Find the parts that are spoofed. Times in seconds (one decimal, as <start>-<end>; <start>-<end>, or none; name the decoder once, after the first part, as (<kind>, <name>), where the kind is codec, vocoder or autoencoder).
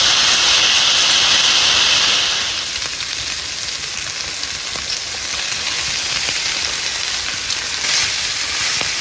none